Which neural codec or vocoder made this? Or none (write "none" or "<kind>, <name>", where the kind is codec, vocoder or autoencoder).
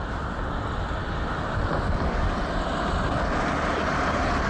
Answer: none